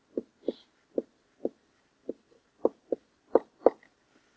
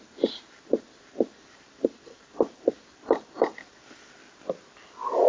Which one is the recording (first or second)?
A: first